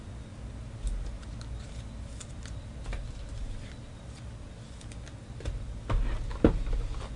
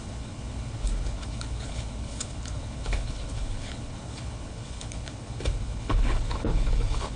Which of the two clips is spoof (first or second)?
second